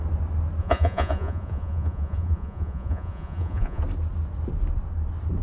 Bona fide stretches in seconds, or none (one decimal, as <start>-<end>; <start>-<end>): 0.0-0.6; 3.8-5.4